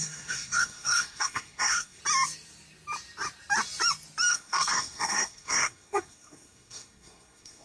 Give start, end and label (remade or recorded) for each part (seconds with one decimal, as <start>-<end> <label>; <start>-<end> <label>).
0.0-2.0 remade; 2.0-4.3 recorded; 4.3-7.6 remade